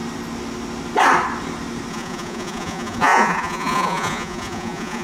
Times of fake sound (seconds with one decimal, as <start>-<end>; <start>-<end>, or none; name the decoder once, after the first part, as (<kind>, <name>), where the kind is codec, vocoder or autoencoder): 1.9-5.0 (vocoder, Vocos)